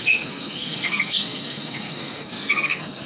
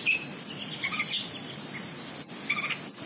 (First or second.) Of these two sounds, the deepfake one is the first